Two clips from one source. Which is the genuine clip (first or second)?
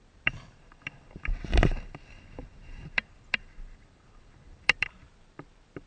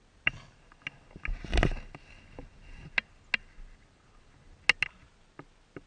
second